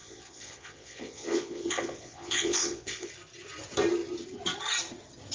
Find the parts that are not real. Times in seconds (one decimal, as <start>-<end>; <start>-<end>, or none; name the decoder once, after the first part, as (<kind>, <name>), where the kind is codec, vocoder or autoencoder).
0.0-3.1 (vocoder, Vocos)

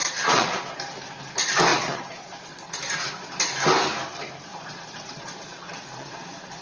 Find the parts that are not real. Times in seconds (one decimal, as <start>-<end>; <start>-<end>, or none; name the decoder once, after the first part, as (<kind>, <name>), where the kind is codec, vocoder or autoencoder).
0.0-0.6 (vocoder, Vocos); 1.7-2.7; 4.5-6.6

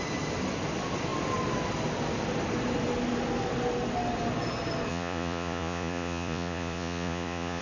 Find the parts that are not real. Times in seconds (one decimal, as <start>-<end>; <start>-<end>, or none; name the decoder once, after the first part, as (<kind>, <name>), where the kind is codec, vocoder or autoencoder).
4.9-7.6 (vocoder, Vocos)

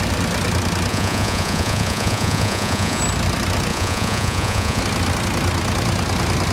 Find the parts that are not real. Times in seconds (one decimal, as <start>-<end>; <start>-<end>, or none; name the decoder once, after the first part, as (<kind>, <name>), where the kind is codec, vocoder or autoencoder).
0.9-3.0 (vocoder, Vocos); 3.7-4.8

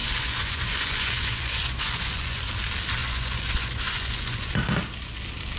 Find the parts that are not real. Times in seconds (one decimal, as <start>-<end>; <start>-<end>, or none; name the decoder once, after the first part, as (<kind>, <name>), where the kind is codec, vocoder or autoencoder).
0.0-2.5 (vocoder, Vocos); 3.0-4.5